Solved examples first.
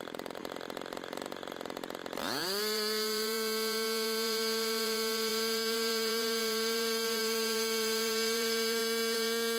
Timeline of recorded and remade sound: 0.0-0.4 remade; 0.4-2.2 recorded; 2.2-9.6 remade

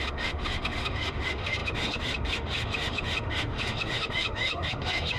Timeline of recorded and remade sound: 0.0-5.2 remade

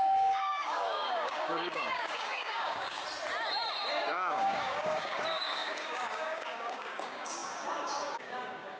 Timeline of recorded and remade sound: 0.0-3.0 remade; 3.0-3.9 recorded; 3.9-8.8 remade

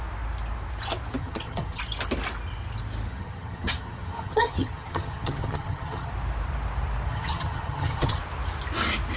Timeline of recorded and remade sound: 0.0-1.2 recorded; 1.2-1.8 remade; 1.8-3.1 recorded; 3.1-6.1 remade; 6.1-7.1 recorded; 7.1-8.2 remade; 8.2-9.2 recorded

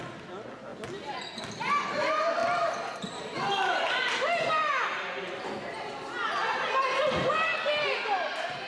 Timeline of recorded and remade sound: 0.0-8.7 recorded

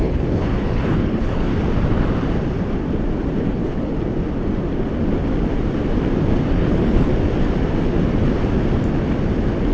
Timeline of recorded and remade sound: 0.0-1.5 remade; 1.5-3.5 recorded; 3.5-3.9 remade; 3.9-6.5 recorded; 6.5-7.1 remade; 7.1-9.7 recorded

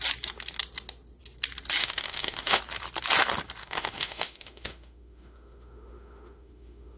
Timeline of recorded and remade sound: 0.0-1.8 recorded; 1.8-2.6 remade; 2.6-3.6 recorded; 3.6-7.0 remade